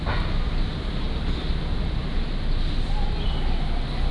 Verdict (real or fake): real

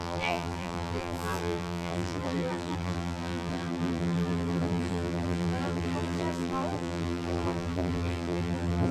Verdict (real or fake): fake